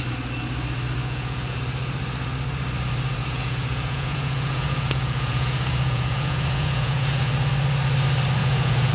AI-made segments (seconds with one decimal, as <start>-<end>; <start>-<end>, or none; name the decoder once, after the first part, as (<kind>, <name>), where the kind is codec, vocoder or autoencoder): 1.0-1.6 (vocoder, Vocos); 3.2-7.5; 8.4-8.9